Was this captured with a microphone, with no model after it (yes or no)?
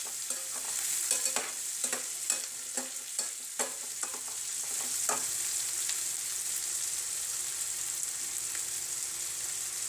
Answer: yes